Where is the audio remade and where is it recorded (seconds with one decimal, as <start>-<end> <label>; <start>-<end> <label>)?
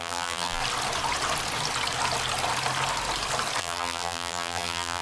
0.0-0.6 remade; 0.6-3.6 recorded; 3.6-5.0 remade